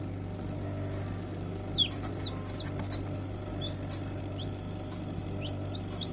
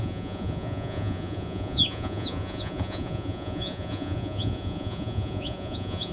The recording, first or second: first